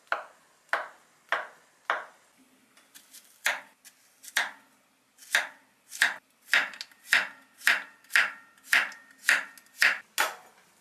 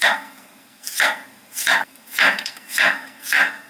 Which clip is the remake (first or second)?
second